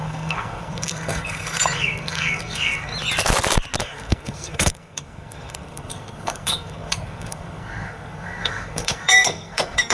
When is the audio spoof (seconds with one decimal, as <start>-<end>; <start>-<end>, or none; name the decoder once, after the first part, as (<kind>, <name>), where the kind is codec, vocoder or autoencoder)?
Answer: 0.0-2.9 (codec, SNAC); 3.8-9.9